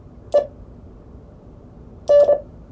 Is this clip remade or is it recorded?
recorded